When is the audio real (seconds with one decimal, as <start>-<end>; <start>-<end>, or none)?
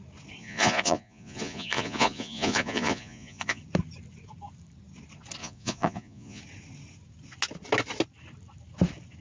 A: 0.0-0.4; 3.6-5.4; 6.4-9.2